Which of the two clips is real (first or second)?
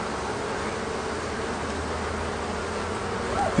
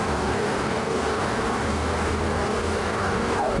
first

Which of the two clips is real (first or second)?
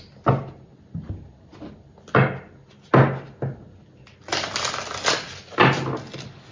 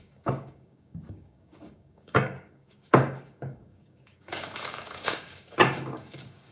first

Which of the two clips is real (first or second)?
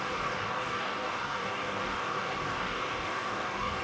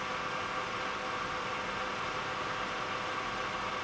second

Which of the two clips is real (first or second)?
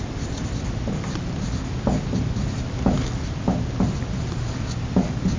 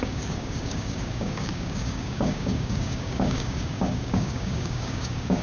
first